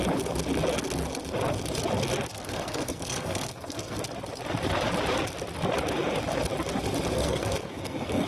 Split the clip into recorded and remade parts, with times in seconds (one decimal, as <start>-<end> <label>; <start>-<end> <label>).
0.0-2.3 recorded; 2.3-4.0 remade; 4.0-7.1 recorded; 7.1-8.3 remade